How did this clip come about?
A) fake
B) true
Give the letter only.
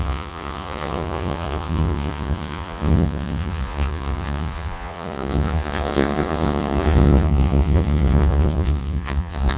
A